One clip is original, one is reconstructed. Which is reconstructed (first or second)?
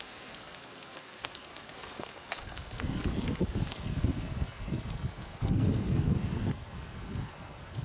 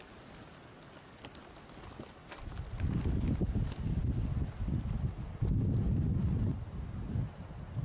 first